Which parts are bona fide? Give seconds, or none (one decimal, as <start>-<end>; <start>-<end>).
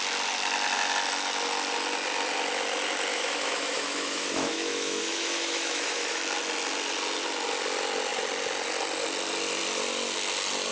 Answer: 0.0-3.1; 6.2-10.7